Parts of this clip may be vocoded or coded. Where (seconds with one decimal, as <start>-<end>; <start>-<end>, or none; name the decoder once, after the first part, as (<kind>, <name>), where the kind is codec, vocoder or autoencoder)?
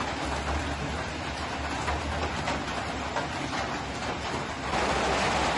0.6-1.6 (vocoder, BigVGAN v2); 2.7-4.5